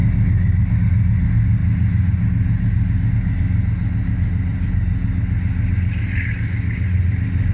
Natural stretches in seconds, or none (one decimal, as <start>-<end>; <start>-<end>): 0.0-7.5